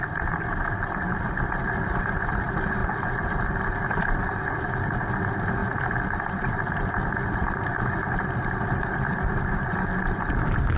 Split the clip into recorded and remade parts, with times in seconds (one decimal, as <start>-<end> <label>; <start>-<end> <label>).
0.0-10.8 recorded